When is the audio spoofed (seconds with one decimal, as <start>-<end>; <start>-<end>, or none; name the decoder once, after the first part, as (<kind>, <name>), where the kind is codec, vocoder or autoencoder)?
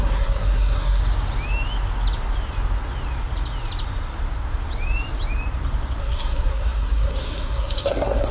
0.0-1.0 (codec, SNAC); 6.0-8.3